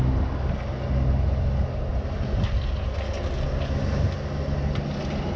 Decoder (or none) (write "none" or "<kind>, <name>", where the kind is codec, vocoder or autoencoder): none